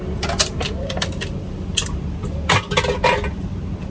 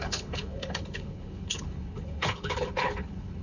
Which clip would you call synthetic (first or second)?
second